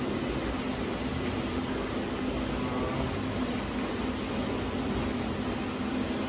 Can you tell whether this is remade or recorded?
recorded